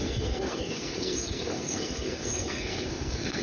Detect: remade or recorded remade